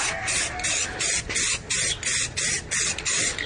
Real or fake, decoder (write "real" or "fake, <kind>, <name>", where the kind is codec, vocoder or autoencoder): real